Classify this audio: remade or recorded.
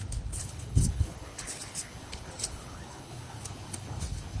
remade